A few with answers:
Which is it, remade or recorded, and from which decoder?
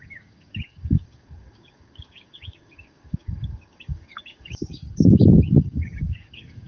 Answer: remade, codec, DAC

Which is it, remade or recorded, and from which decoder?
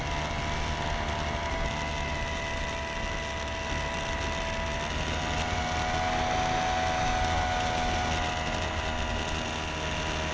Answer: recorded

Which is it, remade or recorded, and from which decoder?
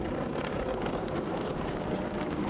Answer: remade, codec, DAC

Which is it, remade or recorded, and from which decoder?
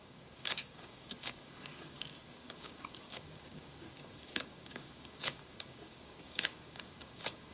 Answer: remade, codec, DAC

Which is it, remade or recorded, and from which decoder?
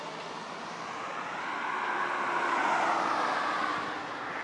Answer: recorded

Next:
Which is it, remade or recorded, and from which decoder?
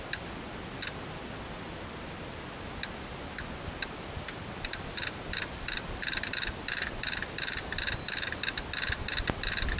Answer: recorded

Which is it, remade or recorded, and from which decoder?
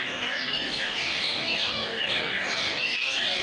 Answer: remade, codec, DAC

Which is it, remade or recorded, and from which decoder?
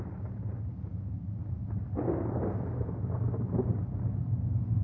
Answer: recorded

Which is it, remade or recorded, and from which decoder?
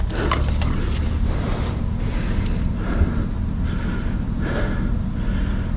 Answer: recorded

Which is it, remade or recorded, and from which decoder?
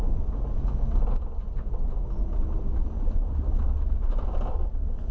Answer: recorded